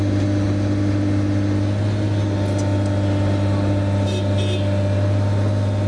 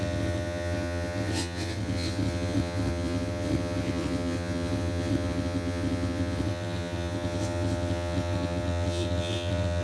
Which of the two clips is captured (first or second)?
first